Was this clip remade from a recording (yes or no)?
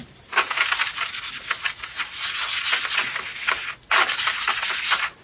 no